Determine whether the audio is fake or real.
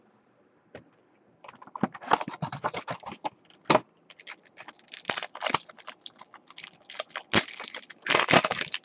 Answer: real